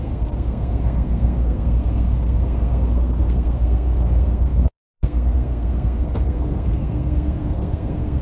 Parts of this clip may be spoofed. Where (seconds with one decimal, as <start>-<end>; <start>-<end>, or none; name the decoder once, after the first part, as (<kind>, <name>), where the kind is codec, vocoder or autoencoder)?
0.0-8.2 (codec, SNAC)